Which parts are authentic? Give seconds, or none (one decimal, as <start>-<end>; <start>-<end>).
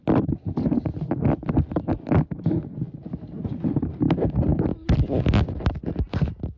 0.0-6.6